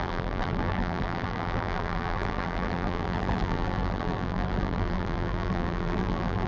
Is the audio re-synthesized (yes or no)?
yes